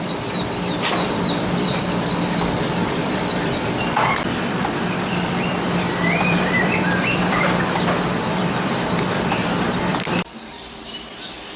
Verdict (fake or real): fake